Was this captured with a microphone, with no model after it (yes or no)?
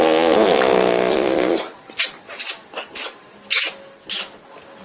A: yes